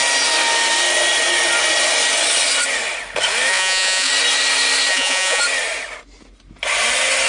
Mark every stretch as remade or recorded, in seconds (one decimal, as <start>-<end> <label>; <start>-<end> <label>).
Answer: 0.0-3.5 recorded; 3.5-4.1 remade; 4.1-4.9 recorded; 4.9-5.4 remade; 5.4-7.3 recorded